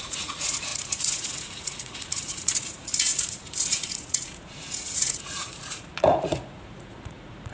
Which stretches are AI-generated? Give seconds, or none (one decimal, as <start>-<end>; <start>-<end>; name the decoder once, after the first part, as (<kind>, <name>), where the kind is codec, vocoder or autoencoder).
0.0-7.5 (vocoder, Vocos)